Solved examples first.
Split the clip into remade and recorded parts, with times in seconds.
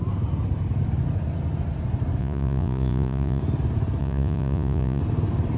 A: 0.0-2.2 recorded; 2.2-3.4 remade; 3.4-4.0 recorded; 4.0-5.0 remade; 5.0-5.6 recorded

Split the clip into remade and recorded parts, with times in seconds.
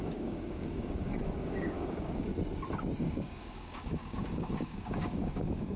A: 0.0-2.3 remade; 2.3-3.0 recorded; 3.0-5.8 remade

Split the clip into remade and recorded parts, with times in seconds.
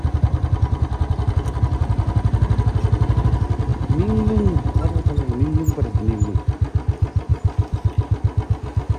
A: 0.0-7.3 recorded; 7.3-7.8 remade; 7.8-9.0 recorded